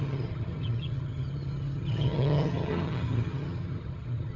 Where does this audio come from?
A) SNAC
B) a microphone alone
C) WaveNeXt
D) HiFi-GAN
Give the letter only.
D